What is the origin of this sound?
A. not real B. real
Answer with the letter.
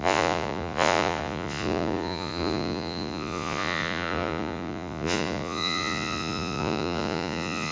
A